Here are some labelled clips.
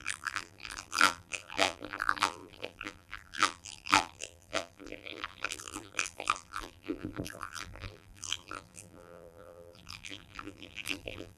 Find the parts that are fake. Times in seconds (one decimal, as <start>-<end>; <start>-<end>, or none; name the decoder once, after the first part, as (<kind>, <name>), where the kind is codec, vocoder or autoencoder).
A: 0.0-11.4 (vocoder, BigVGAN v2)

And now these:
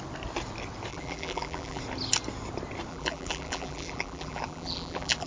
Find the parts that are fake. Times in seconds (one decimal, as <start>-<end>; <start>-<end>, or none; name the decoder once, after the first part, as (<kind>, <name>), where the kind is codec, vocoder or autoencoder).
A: 0.9-1.8 (vocoder, BigVGAN v2); 2.9-5.3

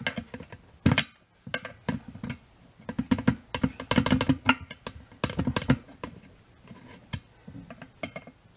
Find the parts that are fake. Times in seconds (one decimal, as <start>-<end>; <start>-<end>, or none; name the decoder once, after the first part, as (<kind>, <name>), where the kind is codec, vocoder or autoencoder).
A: none

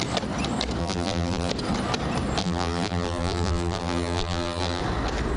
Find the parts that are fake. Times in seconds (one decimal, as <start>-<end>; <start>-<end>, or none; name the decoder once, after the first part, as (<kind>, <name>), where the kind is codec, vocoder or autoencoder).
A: 0.8-1.5 (vocoder, BigVGAN v2); 2.4-4.8

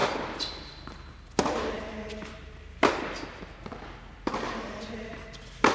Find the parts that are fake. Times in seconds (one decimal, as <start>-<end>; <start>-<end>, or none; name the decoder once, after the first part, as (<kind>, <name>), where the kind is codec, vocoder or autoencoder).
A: none

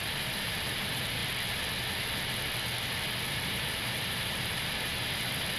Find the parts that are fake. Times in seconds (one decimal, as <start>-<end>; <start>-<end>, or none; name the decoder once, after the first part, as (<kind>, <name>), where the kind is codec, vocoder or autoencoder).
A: 0.0-1.2 (vocoder, BigVGAN v2); 3.5-4.9

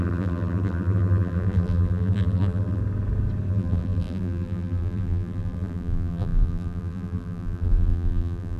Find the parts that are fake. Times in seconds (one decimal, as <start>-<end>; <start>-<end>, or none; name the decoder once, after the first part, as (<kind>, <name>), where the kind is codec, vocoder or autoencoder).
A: 0.0-2.8 (vocoder, BigVGAN v2); 3.5-8.6